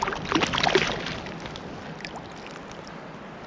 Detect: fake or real real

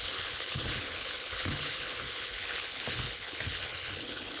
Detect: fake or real fake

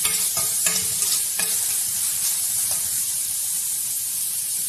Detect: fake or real fake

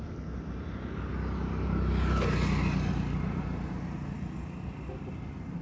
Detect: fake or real real